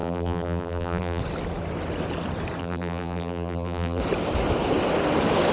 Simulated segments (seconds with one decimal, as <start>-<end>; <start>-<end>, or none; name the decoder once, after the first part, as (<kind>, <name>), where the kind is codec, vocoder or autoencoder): 0.0-1.2 (vocoder, BigVGAN v2); 2.6-4.0